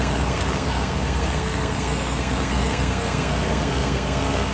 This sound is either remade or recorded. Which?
remade